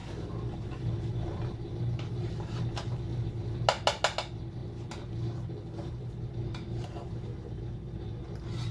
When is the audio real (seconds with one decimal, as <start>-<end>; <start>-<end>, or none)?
0.0-8.7